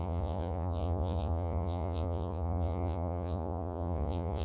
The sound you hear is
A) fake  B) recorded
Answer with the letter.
A